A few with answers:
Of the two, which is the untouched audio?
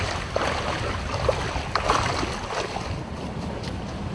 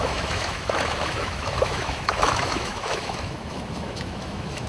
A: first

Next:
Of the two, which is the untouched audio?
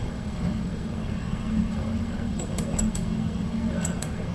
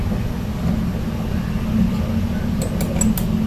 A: second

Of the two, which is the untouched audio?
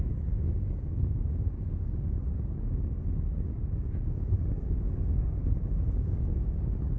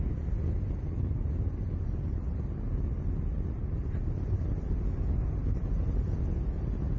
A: second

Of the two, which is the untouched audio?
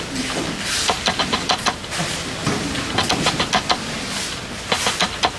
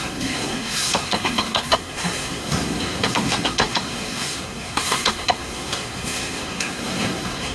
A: first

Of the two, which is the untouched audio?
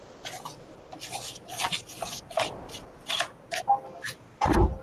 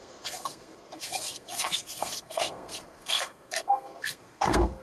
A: first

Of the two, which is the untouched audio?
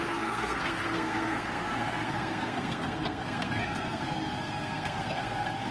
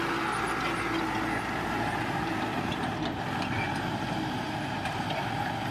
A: second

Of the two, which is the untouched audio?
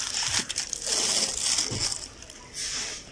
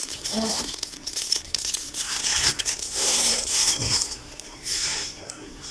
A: first